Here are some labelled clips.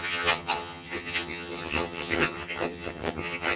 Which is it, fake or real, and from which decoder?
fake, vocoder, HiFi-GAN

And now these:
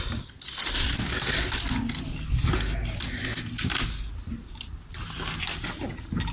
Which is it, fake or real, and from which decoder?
real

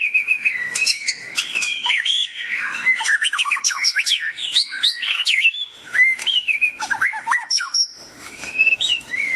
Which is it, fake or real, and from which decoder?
fake, autoencoder, DAC-VAE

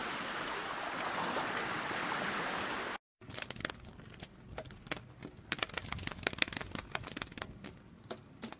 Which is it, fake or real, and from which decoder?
real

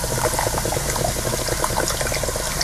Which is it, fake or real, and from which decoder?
real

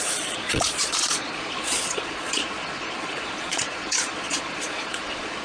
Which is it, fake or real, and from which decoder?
fake, vocoder, Vocos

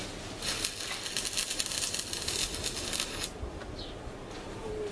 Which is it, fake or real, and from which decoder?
real